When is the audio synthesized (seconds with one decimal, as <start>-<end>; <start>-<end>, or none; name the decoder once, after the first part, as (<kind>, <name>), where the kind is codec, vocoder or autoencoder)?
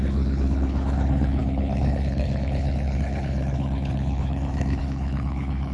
0.0-5.7 (codec, HILCodec)